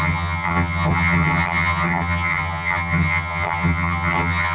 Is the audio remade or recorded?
remade